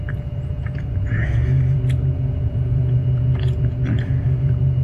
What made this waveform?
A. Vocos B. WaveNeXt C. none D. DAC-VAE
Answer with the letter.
A